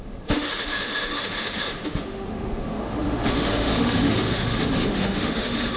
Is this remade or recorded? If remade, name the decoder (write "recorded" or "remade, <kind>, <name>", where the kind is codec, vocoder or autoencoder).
remade, autoencoder, DAC-VAE